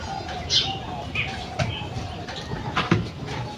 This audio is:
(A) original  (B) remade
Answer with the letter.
A